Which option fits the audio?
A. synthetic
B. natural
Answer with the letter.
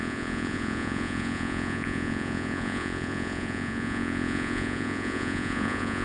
A